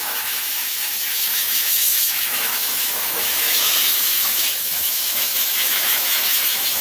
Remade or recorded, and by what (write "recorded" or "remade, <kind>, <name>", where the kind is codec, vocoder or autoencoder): remade, autoencoder, DAC-VAE